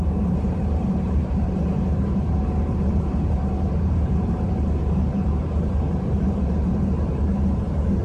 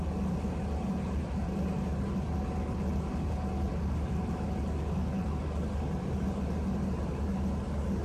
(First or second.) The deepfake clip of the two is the first